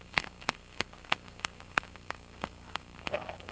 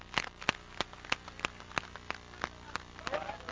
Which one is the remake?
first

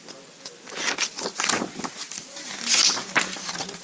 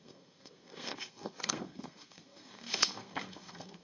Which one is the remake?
second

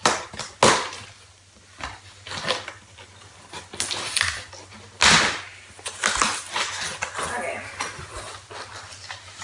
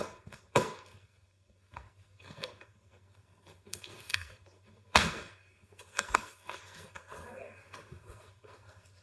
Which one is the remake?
second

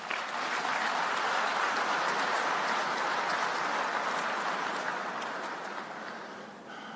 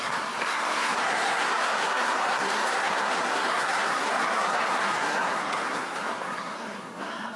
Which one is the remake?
second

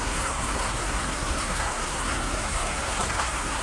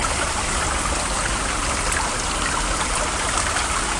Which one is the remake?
first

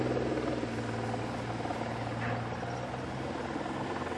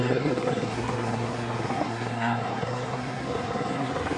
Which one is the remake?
second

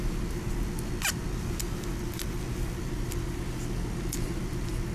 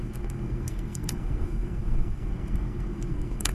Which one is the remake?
second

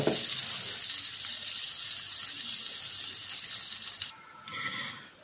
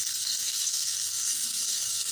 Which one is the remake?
second